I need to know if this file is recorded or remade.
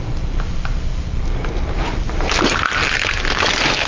recorded